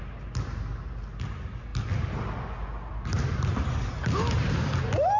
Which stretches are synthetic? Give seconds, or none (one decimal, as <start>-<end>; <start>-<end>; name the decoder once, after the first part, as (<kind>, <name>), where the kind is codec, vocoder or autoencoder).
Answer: none